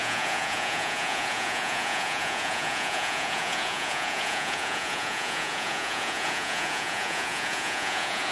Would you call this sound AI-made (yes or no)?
yes